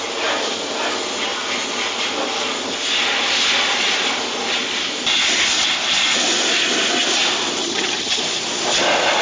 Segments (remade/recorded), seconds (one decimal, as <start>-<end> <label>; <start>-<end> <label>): 0.0-7.6 recorded; 7.6-8.2 remade; 8.2-9.2 recorded